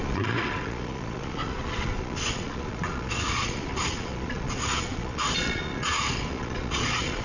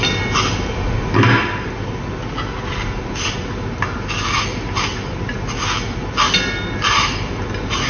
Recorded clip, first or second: second